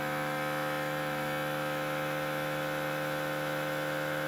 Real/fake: fake